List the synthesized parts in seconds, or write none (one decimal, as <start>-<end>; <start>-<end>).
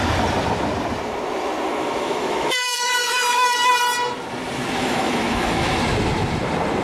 1.7-3.7; 4.8-5.8